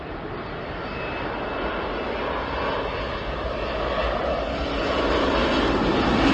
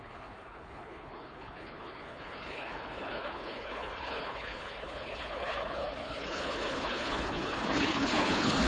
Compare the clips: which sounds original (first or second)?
first